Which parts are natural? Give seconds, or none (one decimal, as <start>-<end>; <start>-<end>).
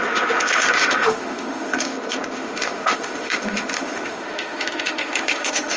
none